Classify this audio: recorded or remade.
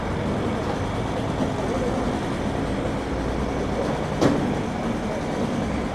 recorded